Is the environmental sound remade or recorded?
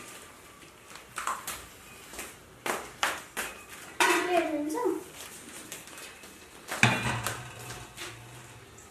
recorded